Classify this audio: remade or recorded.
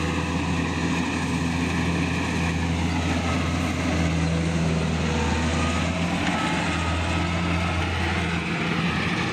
recorded